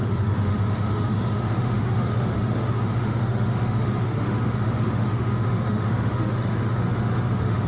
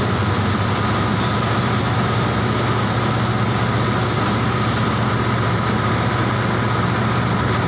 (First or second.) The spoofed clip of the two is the first